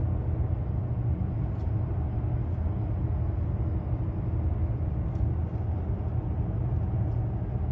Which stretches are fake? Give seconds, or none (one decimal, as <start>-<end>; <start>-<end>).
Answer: none

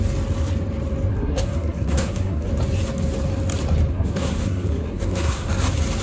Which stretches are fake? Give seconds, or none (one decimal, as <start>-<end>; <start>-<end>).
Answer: 1.1-2.5; 3.9-5.5

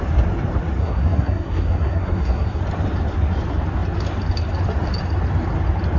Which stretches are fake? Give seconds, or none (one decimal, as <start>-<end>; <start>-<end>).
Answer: 0.8-2.6

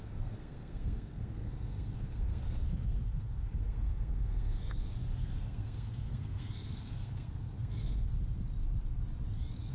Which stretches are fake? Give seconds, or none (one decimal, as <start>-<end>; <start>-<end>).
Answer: 0.0-8.1

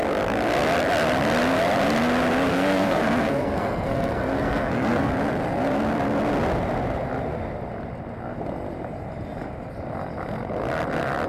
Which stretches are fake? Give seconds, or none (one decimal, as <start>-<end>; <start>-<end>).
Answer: 2.5-5.1

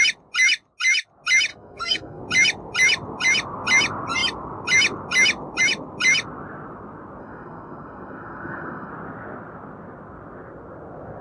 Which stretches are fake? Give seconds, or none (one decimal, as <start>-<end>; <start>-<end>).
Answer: 1.5-2.2; 7.2-8.9